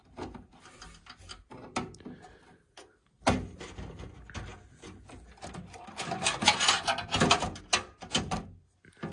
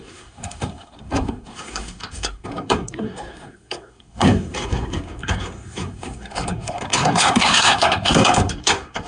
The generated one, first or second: second